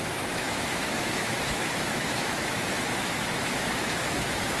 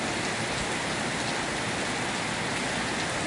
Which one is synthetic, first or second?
first